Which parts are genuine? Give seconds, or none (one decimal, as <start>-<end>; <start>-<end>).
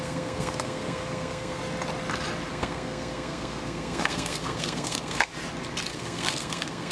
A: 1.6-2.5; 5.3-5.9